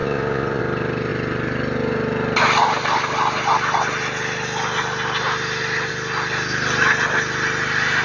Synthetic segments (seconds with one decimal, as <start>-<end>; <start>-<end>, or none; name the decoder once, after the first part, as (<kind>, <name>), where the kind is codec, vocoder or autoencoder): 0.0-0.6 (vocoder, Vocos)